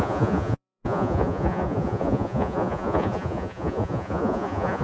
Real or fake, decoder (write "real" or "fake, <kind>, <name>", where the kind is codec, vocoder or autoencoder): fake, vocoder, Vocos